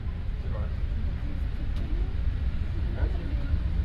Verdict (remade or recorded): recorded